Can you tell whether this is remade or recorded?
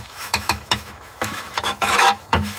remade